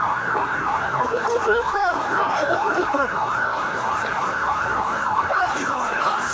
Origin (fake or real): fake